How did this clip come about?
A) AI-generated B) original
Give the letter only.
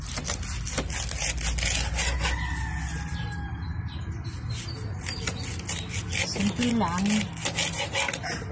B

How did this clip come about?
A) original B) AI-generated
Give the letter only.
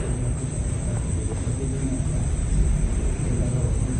A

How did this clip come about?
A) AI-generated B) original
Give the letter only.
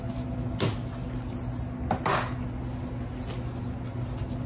B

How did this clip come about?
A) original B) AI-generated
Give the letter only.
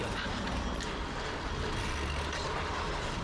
A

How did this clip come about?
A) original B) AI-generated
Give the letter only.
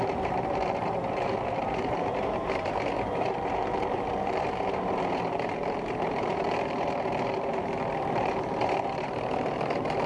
B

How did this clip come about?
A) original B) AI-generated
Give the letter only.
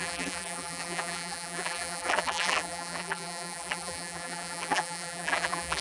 B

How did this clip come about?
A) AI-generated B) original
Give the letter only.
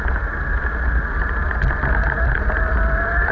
B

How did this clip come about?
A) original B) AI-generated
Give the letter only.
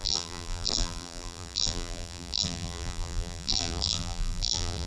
B